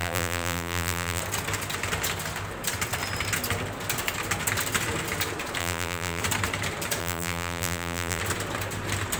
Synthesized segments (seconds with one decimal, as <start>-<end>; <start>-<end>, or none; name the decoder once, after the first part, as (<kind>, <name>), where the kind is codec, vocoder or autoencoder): 0.0-1.2 (vocoder, BigVGAN v2); 5.6-6.2; 7.0-8.2